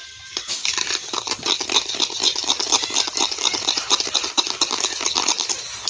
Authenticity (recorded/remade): remade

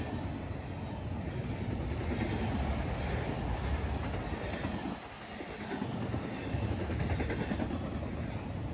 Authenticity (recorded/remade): recorded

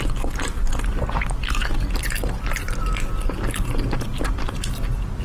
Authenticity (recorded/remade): recorded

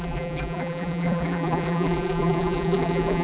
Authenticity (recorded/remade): remade